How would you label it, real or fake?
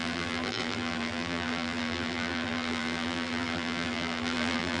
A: fake